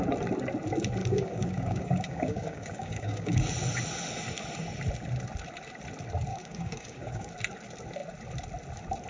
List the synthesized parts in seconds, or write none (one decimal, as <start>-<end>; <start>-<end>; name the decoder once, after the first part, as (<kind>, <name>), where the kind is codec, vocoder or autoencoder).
1.0-3.5 (codec, DAC); 6.3-7.3